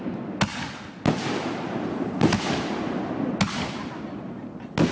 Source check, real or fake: real